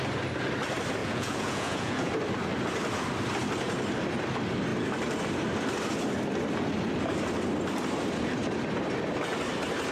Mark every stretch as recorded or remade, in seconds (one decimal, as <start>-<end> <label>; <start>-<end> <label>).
0.0-1.0 recorded; 1.0-2.1 remade; 2.1-9.9 recorded

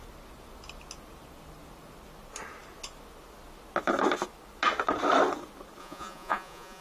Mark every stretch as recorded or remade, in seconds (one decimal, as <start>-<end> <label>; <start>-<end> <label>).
0.0-5.8 recorded; 5.8-6.8 remade

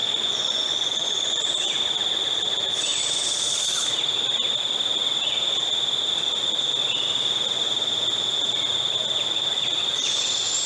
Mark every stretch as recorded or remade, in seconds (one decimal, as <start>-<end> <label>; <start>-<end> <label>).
0.0-1.4 remade; 1.4-10.7 recorded

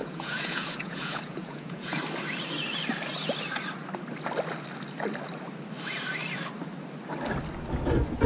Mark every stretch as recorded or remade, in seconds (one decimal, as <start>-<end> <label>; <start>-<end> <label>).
0.0-2.0 remade; 2.0-8.3 recorded

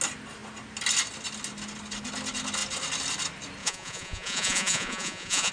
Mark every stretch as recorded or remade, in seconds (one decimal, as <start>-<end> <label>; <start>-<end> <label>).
0.0-3.6 recorded; 3.6-5.5 remade

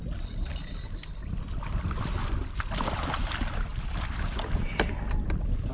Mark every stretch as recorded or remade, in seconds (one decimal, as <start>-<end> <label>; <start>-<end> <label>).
0.0-5.7 recorded

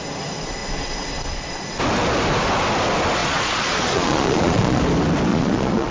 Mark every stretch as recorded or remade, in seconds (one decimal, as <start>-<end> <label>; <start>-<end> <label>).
0.0-3.2 recorded; 3.2-4.8 remade; 4.8-5.3 recorded; 5.3-5.9 remade

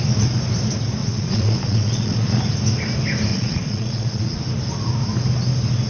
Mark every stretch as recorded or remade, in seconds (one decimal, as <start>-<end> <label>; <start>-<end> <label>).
0.0-1.0 recorded; 1.0-2.4 remade; 2.4-3.3 recorded; 3.3-4.4 remade; 4.4-5.9 recorded